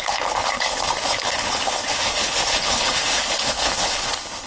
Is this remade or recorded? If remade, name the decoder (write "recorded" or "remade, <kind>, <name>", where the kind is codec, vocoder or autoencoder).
remade, codec, HILCodec